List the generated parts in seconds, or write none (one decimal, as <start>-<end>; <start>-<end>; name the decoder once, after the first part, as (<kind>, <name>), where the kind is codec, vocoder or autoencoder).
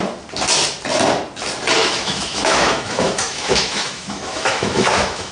1.8-5.3 (autoencoder, DAC-VAE)